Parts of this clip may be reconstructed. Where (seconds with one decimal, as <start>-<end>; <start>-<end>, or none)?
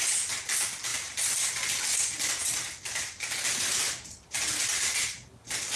none